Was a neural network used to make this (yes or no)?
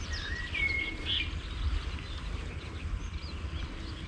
no